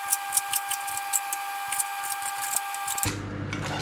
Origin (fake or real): real